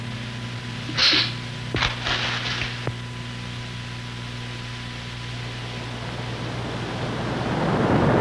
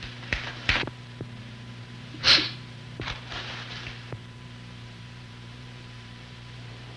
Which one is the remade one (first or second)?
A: second